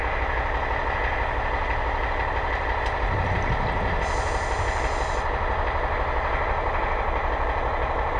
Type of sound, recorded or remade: recorded